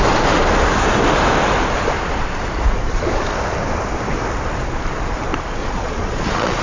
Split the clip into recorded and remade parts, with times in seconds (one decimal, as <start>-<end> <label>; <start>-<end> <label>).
0.0-5.6 recorded; 5.6-6.6 remade